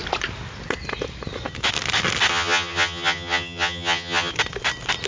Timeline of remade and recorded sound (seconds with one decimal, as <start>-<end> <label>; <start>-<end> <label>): 0.0-2.3 recorded; 2.3-4.3 remade; 4.3-5.1 recorded